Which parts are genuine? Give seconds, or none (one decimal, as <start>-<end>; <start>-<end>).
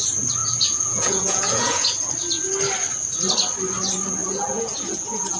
0.0-0.4; 2.1-4.2